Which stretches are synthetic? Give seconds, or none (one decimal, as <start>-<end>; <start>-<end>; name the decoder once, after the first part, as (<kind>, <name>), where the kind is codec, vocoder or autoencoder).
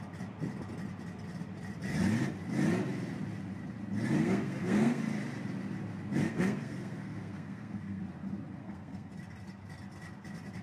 4.2-5.0 (codec, SNAC); 6.2-8.0; 8.6-9.1